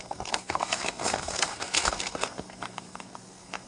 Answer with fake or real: fake